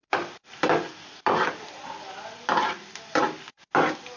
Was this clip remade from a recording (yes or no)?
no